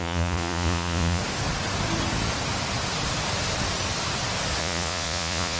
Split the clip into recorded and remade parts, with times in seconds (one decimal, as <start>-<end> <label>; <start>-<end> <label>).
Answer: 0.0-1.2 remade; 1.2-4.6 recorded; 4.6-5.6 remade